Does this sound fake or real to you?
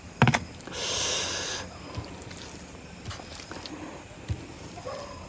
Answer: real